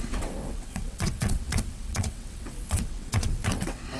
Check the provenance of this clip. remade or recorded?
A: remade